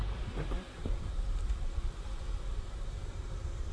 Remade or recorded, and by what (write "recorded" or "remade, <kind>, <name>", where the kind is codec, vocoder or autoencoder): remade, vocoder, BigVGAN v2